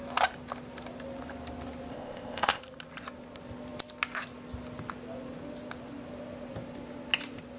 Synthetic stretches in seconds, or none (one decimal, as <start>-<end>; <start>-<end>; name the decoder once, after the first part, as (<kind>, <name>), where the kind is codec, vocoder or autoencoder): 1.9-2.6 (codec, ZipCodec)